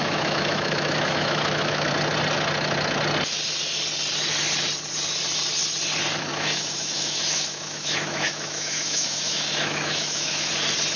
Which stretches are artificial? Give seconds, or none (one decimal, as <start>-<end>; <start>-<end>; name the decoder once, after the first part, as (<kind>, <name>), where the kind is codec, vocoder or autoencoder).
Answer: 0.0-1.9 (autoencoder, DAC-VAE); 6.3-10.5